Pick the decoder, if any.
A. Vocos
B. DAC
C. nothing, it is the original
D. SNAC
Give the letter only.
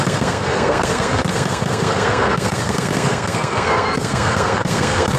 D